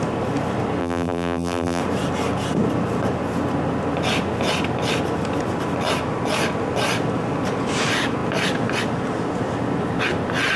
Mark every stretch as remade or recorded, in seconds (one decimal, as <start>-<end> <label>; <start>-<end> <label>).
0.0-0.8 recorded; 0.8-1.8 remade; 1.8-10.6 recorded